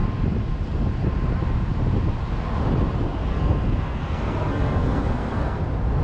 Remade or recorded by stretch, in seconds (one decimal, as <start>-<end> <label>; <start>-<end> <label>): 0.0-3.3 recorded; 3.3-5.6 remade; 5.6-6.0 recorded

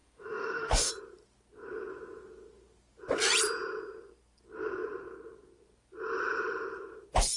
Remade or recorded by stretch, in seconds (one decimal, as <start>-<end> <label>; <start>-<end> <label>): 0.0-0.9 remade; 0.9-7.4 recorded